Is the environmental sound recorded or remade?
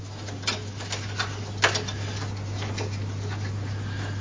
recorded